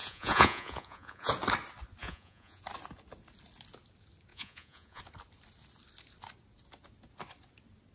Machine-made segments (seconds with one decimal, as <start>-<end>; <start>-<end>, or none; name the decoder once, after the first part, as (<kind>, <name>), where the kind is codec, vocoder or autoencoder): 0.0-1.3 (vocoder, Vocos); 2.0-2.6; 4.3-5.0